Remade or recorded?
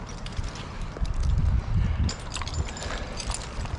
recorded